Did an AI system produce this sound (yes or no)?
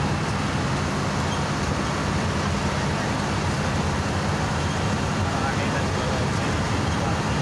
no